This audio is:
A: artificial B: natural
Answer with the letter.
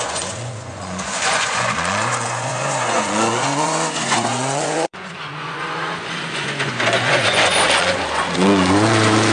A